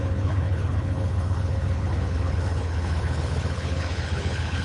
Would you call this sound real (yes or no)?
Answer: no